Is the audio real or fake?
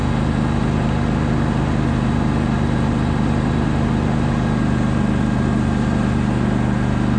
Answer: real